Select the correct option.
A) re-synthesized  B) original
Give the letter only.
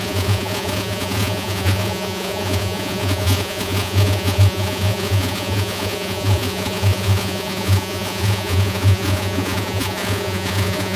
A